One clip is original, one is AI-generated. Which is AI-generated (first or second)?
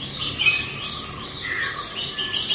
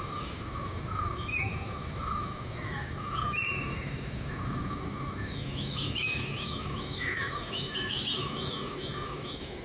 second